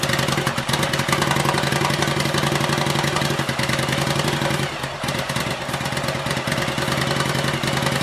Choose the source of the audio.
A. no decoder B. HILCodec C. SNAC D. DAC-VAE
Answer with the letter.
A